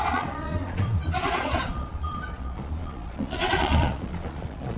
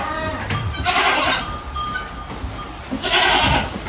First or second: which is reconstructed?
first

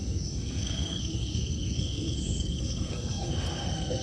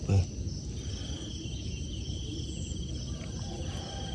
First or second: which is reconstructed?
first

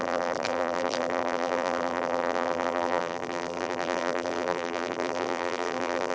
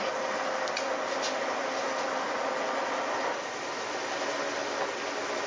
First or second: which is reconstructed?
first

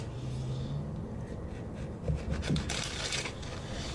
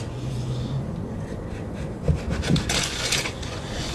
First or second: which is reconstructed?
second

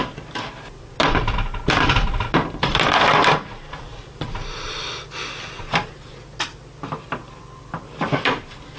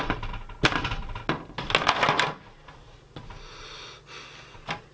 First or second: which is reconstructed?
first